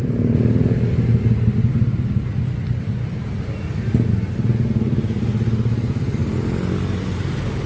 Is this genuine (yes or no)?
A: yes